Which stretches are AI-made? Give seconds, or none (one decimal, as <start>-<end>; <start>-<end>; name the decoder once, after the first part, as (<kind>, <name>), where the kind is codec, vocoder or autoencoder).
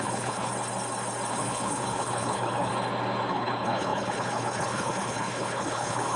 0.0-0.5 (codec, HILCodec); 1.3-2.7; 3.3-6.2